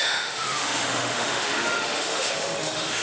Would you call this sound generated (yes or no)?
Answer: yes